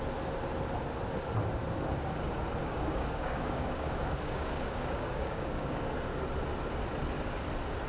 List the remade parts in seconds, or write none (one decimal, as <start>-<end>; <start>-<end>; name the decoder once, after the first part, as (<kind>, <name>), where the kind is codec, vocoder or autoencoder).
2.6-5.9 (codec, DAC)